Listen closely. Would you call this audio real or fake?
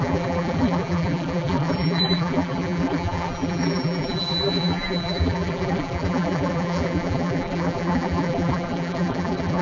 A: fake